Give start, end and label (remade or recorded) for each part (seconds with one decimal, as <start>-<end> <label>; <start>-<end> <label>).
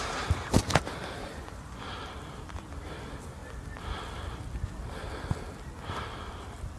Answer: 0.0-1.2 recorded; 1.2-1.8 remade; 1.8-6.8 recorded